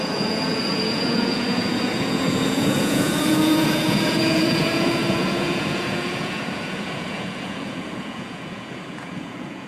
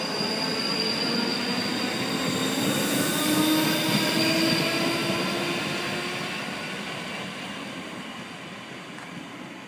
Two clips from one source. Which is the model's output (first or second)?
first